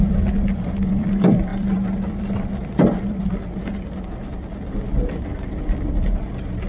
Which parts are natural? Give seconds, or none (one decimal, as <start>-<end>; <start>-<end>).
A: none